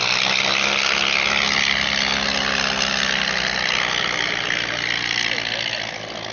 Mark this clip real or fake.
real